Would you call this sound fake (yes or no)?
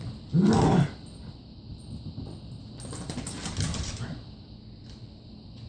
no